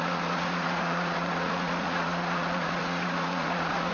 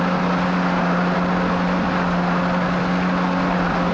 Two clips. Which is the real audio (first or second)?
second